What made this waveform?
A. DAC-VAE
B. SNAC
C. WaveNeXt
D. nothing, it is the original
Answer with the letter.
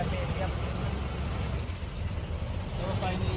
D